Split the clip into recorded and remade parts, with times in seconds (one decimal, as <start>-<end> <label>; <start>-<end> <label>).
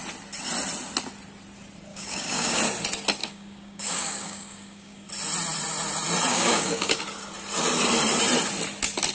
0.0-1.9 recorded; 1.9-2.6 remade; 2.6-3.2 recorded; 3.2-5.1 remade; 5.1-6.3 recorded; 6.3-7.0 remade; 7.0-9.1 recorded